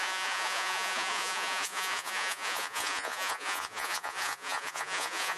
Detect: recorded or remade remade